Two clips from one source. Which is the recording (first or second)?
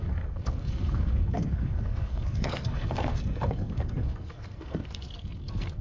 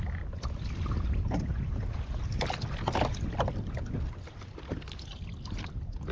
second